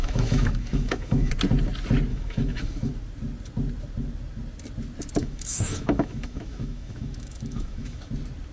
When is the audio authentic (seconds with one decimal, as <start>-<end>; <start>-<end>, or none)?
1.3-2.1; 2.9-5.2; 8.1-8.5